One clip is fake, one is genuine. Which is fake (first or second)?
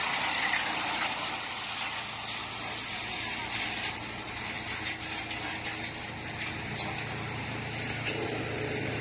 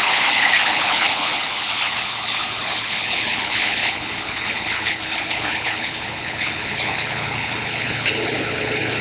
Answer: second